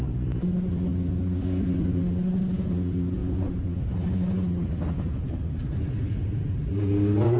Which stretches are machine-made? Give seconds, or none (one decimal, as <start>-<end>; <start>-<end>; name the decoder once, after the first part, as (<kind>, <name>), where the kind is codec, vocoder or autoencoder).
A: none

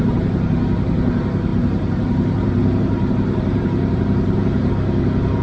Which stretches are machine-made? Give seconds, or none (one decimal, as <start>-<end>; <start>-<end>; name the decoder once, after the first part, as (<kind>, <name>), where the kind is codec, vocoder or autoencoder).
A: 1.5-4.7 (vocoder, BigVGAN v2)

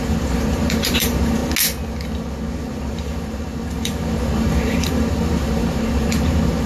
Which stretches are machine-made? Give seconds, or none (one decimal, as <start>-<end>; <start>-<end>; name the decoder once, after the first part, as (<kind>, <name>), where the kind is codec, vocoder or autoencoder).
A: 0.0-1.4 (vocoder, BigVGAN v2); 2.5-6.7